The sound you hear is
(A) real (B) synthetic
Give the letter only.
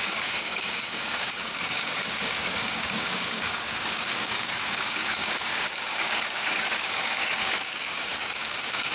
B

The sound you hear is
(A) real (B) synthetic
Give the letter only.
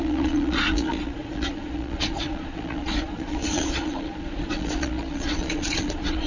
B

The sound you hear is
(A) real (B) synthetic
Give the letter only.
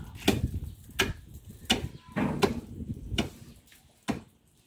A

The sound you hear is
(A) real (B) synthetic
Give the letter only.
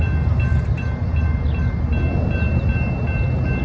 B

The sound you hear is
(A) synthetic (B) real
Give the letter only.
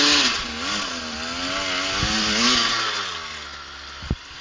B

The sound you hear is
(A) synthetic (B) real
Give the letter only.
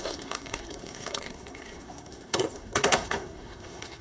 A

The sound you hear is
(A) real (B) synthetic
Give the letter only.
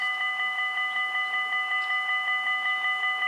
A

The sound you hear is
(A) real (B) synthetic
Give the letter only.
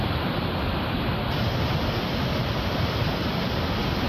A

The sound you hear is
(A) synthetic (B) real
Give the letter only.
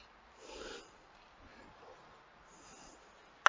B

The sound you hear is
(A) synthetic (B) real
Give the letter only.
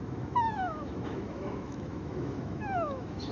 A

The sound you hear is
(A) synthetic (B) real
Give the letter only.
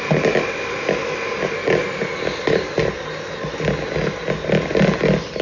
B